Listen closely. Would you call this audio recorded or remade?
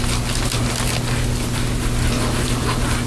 recorded